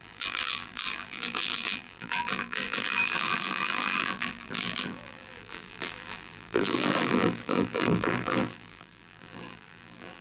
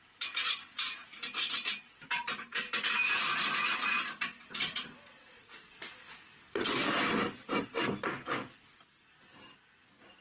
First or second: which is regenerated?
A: first